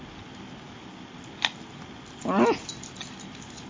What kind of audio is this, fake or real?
real